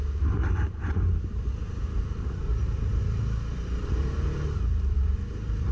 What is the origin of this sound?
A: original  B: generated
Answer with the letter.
B